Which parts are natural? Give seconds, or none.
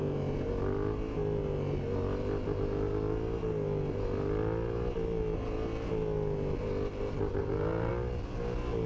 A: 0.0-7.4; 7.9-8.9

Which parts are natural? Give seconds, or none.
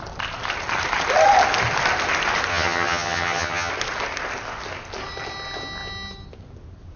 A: 0.0-2.5; 3.7-7.0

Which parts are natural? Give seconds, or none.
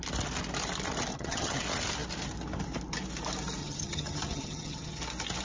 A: 0.0-1.1; 1.6-3.6; 5.0-5.4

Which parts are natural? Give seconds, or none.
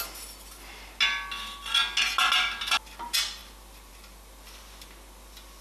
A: 0.0-5.6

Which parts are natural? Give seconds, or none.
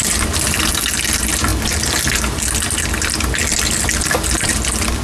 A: 0.0-5.0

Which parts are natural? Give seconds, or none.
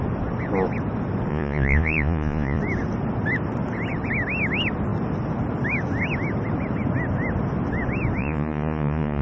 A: 0.0-1.3; 2.6-8.2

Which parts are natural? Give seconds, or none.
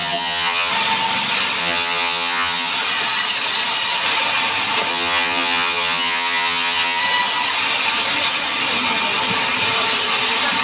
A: 0.7-1.6; 2.7-4.9; 7.0-10.6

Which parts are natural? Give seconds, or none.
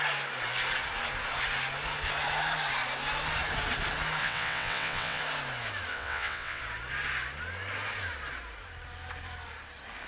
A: 0.0-4.2; 5.2-5.9; 6.6-10.1